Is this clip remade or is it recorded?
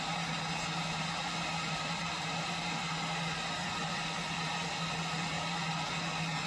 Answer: recorded